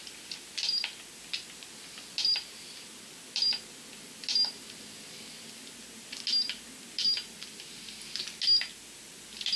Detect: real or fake real